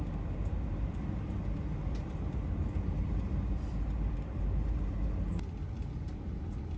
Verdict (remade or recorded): recorded